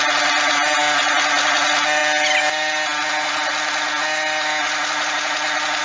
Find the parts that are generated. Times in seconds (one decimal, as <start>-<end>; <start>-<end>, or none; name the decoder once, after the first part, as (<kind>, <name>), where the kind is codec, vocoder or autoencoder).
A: none